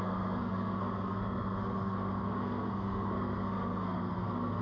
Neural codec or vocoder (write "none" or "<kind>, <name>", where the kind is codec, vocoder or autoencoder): codec, SNAC